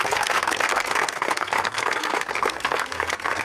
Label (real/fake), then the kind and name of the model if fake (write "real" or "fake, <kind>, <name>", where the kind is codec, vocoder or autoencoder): fake, codec, SNAC